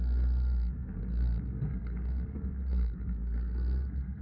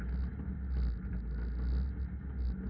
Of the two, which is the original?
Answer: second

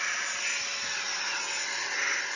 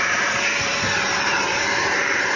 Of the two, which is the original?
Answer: first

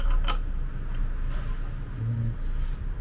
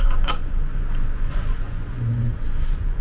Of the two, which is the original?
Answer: first